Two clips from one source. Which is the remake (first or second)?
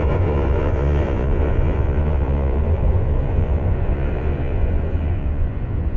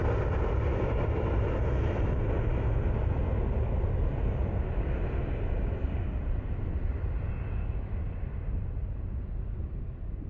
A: first